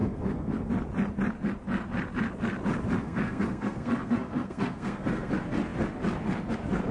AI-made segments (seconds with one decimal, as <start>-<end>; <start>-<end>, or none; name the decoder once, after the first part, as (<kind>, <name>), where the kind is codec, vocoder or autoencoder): 0.0-0.7 (codec, SNAC); 3.0-5.3